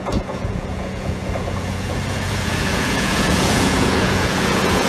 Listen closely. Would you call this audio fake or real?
fake